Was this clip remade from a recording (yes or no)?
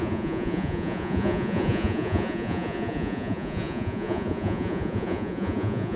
yes